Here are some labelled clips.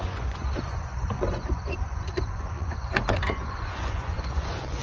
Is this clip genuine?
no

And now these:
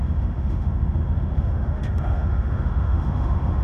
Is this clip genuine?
no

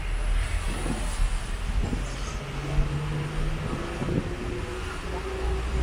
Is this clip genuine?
yes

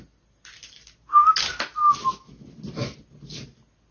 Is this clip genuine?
yes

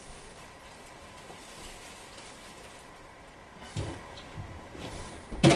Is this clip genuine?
no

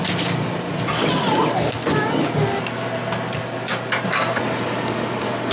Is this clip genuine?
yes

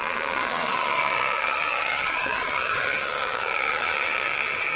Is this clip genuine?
no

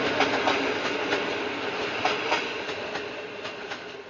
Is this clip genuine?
yes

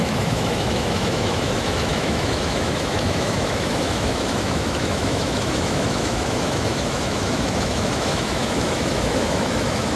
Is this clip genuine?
no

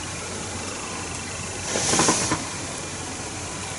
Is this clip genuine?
no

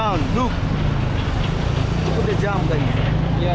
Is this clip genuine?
yes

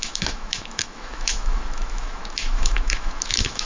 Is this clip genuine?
no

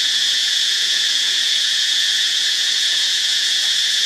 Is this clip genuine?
no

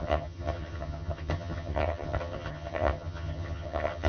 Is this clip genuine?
no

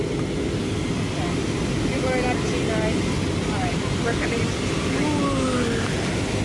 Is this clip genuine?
yes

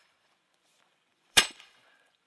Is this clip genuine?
no